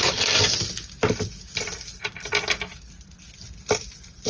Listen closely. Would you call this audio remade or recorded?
recorded